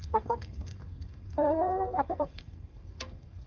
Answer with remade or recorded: remade